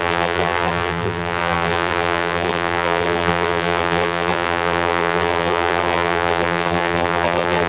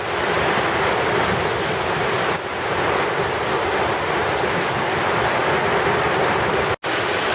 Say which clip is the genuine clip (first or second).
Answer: second